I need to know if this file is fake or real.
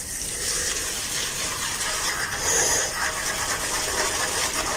fake